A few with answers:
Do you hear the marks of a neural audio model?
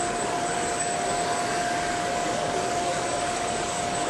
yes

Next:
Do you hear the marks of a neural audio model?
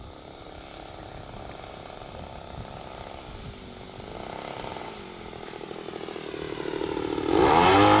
no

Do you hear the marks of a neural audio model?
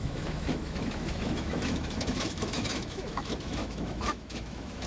yes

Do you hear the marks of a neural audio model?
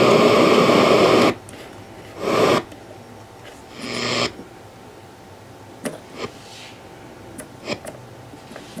no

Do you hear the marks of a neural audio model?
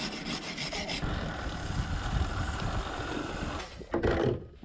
no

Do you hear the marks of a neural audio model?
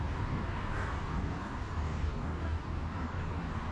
yes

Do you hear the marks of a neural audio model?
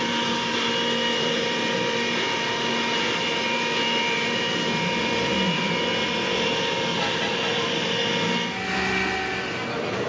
yes